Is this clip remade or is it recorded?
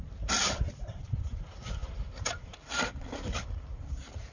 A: remade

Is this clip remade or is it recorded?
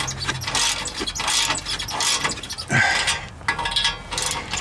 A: recorded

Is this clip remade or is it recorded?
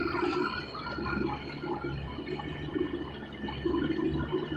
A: recorded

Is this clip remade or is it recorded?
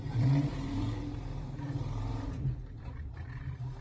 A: remade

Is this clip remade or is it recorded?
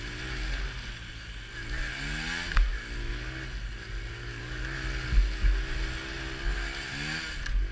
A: recorded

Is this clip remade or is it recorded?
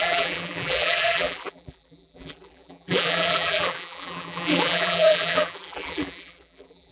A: remade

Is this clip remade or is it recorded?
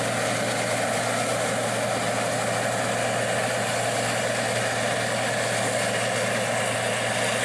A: recorded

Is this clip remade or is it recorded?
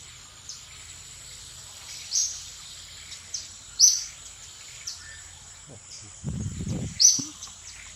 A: remade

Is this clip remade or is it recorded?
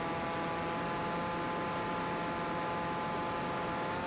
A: recorded